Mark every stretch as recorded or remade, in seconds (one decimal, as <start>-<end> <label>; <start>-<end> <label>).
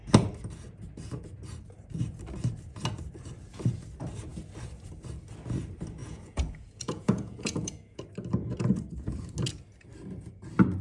0.0-6.0 recorded; 6.0-8.0 remade; 8.0-10.8 recorded